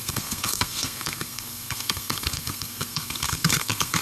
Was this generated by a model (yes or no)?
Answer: yes